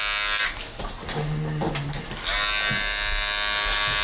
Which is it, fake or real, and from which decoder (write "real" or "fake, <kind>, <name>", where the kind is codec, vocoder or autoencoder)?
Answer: real